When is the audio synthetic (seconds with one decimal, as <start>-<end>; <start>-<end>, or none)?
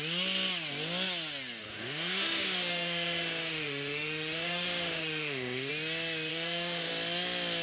1.7-5.7; 6.3-6.9